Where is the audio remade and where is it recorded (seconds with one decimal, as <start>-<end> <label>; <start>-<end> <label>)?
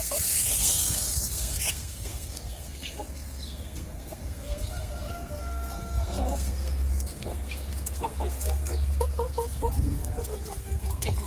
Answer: 0.0-11.3 remade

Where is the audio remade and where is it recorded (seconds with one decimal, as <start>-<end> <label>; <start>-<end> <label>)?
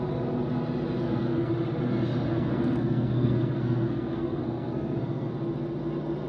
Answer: 0.0-1.0 recorded; 1.0-1.5 remade; 1.5-2.3 recorded; 2.3-5.3 remade; 5.3-6.3 recorded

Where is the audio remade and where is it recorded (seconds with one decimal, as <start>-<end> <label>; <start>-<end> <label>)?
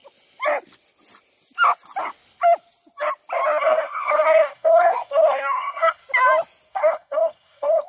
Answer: 0.0-3.6 recorded; 3.6-6.0 remade; 6.0-6.7 recorded; 6.7-7.9 remade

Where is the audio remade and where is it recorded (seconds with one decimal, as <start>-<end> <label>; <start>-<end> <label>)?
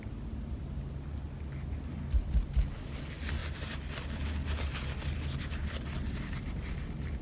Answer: 0.0-7.2 recorded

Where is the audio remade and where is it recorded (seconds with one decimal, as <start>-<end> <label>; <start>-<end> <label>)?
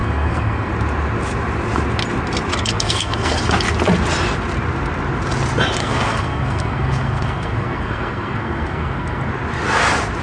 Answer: 0.0-0.7 remade; 0.7-2.5 recorded; 2.5-3.4 remade; 3.4-5.8 recorded; 5.8-9.3 remade; 9.3-10.2 recorded